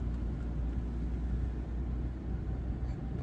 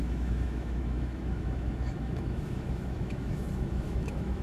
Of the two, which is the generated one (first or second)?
second